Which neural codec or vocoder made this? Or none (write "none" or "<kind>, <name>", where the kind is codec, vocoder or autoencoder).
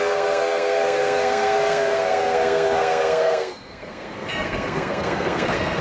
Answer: codec, SNAC